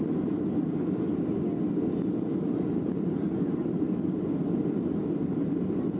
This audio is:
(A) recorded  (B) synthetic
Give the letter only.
A